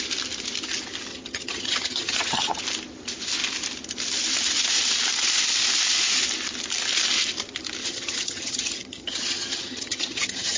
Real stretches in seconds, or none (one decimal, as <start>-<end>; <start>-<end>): 0.0-1.1; 2.6-7.8